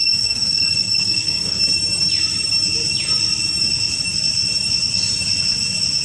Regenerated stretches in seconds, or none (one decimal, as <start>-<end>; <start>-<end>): 0.0-1.6